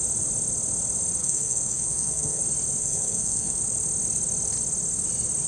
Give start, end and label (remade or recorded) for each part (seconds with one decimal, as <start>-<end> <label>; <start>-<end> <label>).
0.0-1.2 recorded; 1.2-2.4 remade; 2.4-2.8 recorded; 2.8-3.6 remade; 3.6-5.5 recorded